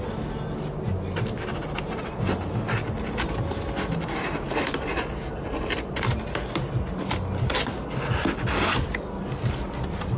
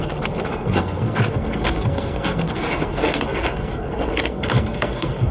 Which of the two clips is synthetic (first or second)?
second